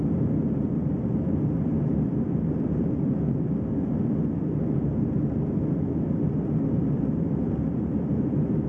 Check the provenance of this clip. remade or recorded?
recorded